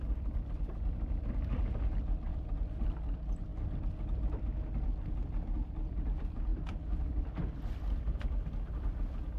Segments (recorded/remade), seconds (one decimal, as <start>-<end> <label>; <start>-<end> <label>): 0.0-2.3 recorded; 2.3-2.9 remade; 2.9-9.4 recorded